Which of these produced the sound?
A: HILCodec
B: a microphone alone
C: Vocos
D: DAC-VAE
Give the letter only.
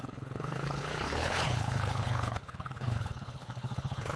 A